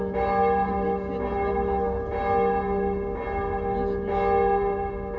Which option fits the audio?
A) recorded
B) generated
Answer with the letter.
A